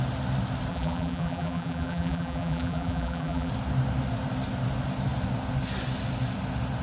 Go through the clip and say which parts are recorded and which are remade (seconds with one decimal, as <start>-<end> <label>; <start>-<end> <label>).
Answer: 0.0-0.7 recorded; 0.7-3.5 remade; 3.5-6.8 recorded